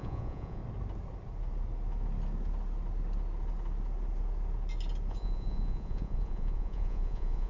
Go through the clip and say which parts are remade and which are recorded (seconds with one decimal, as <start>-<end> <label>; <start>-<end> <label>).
0.0-0.6 remade; 0.6-5.1 recorded; 5.1-7.5 remade

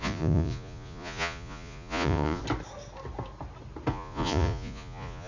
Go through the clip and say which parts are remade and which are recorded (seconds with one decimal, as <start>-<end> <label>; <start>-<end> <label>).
0.0-2.4 remade; 2.4-3.9 recorded; 3.9-5.3 remade

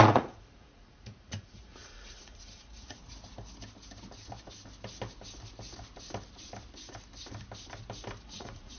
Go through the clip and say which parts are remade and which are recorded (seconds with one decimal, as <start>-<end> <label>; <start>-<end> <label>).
0.0-3.0 remade; 3.0-8.2 recorded; 8.2-8.8 remade

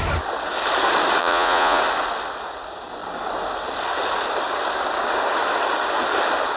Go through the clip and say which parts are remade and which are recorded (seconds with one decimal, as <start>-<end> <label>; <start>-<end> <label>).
0.0-1.2 recorded; 1.2-1.8 remade; 1.8-6.6 recorded

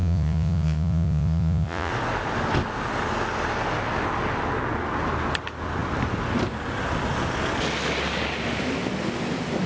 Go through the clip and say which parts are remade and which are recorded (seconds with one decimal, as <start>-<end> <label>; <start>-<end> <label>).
0.0-1.9 remade; 1.9-9.7 recorded

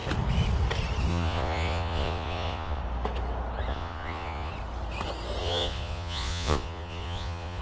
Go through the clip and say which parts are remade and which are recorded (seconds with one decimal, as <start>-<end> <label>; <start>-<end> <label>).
0.0-1.1 recorded; 1.1-2.8 remade; 2.8-3.7 recorded; 3.7-4.5 remade; 4.5-5.4 recorded; 5.4-7.6 remade

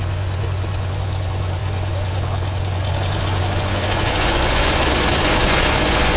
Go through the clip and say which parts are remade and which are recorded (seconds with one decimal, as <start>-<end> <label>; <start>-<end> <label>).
0.0-6.2 remade

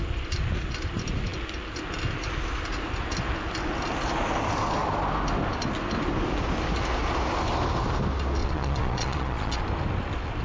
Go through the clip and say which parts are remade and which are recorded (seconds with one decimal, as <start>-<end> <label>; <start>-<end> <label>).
0.0-8.4 recorded; 8.4-9.6 remade; 9.6-10.4 recorded